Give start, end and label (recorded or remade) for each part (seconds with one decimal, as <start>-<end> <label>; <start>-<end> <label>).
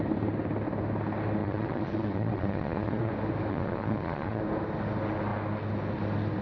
0.0-1.4 recorded; 1.4-3.1 remade; 3.1-3.5 recorded; 3.5-4.4 remade; 4.4-6.4 recorded